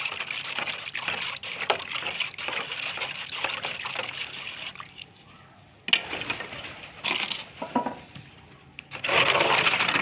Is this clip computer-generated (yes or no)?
no